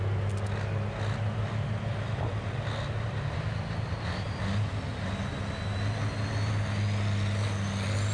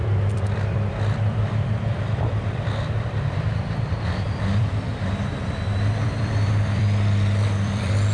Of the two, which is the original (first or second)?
first